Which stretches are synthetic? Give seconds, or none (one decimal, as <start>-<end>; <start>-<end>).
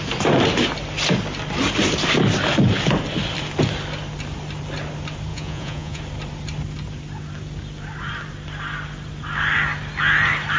5.3-6.0